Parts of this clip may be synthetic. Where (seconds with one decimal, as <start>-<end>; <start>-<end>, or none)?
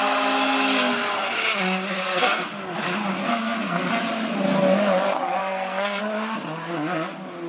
2.0-2.5; 3.2-3.8; 5.4-6.0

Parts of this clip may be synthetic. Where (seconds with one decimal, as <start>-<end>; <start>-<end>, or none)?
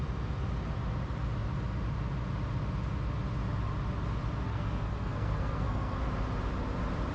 4.5-6.0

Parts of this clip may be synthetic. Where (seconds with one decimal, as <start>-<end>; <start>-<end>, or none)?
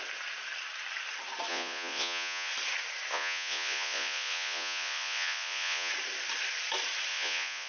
1.5-2.5; 3.1-5.9; 7.1-7.7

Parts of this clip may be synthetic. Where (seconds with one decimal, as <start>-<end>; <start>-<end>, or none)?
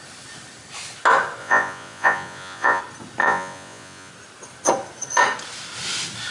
1.4-2.8; 3.2-4.1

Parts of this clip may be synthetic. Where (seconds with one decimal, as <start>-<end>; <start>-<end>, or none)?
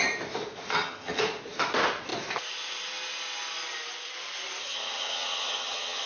0.7-1.2; 4.6-6.1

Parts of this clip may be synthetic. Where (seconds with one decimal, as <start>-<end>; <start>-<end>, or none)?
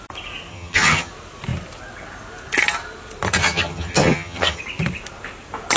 0.5-1.1; 3.4-4.6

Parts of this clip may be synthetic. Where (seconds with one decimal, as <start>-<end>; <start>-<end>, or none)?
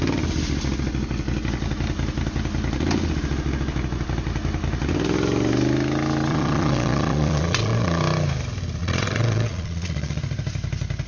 6.3-8.0; 8.8-10.2